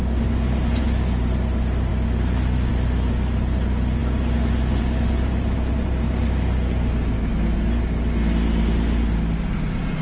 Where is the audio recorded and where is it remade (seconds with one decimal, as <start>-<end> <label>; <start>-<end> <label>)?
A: 0.0-10.0 recorded